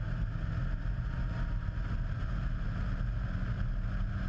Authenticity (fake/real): real